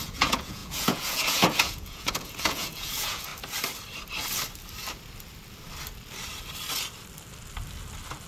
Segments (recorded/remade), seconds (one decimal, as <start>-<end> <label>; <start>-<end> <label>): 0.0-3.3 remade; 3.3-8.3 recorded